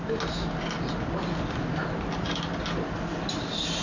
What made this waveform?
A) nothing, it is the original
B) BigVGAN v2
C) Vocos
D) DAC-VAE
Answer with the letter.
A